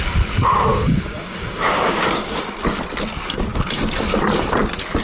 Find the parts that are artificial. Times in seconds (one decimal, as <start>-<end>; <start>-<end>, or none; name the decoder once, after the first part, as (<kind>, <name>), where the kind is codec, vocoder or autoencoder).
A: 0.7-2.4 (codec, DAC)